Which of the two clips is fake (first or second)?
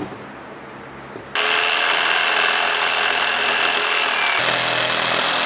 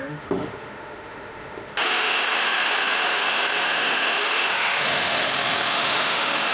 second